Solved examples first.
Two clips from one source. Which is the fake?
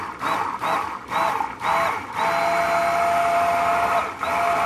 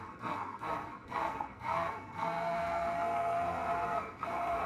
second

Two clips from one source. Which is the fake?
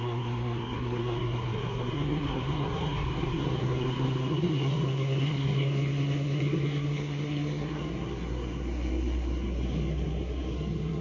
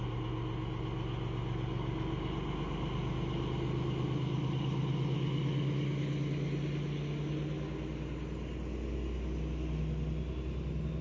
first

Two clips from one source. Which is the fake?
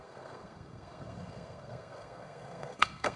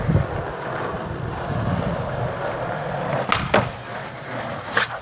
first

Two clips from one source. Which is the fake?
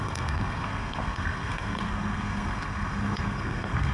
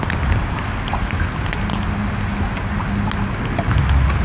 first